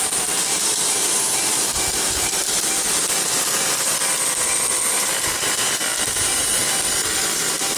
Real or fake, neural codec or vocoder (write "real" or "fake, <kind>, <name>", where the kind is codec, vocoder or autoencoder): fake, vocoder, BigVGAN v2